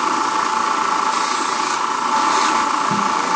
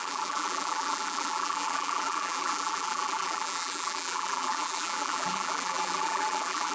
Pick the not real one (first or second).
second